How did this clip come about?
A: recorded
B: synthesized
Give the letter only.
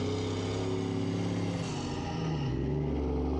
A